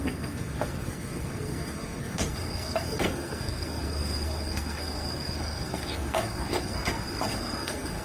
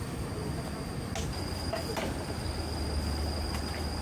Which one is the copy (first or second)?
first